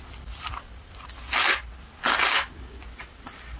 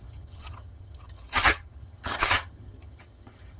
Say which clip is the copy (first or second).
second